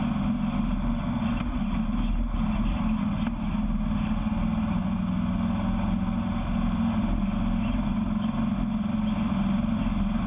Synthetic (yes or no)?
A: no